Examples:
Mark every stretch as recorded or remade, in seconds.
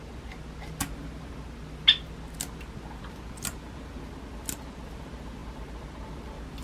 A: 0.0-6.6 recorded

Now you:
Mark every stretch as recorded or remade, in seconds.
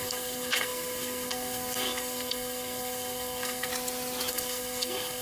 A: 0.0-3.7 remade; 3.7-4.3 recorded; 4.3-5.2 remade